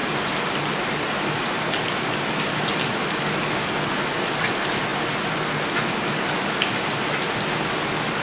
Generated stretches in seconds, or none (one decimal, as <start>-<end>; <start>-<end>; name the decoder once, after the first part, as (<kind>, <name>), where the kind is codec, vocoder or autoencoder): none